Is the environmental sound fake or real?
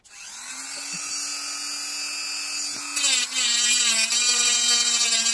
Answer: real